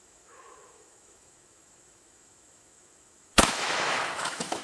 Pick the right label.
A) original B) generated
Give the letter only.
B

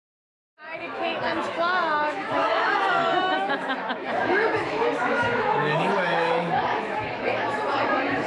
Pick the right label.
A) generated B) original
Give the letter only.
A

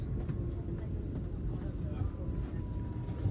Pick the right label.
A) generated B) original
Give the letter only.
B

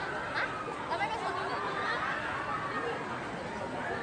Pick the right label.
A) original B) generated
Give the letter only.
A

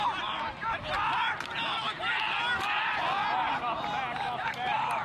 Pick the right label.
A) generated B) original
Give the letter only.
B